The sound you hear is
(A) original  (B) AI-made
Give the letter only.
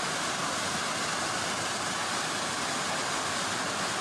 A